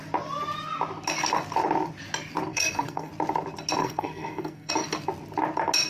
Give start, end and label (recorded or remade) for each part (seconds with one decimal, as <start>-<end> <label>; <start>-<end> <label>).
0.0-2.5 recorded; 2.5-3.1 remade; 3.1-3.8 recorded; 3.8-4.7 remade; 4.7-5.9 recorded